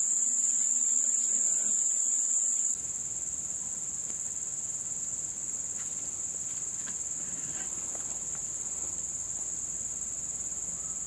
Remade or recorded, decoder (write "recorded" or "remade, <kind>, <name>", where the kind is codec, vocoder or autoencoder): recorded